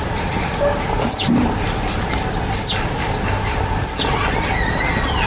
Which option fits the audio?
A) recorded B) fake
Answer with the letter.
A